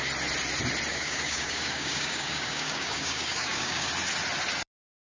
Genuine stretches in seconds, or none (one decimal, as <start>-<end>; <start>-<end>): 0.0-0.9; 3.9-5.0